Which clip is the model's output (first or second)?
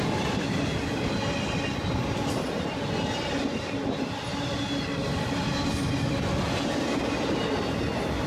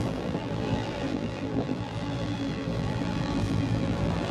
second